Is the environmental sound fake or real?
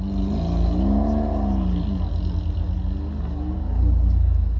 real